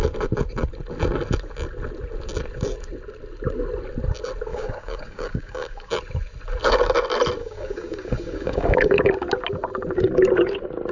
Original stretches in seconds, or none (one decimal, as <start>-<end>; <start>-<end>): 0.0-4.5; 5.9-7.4; 9.1-10.9